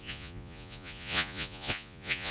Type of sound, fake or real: fake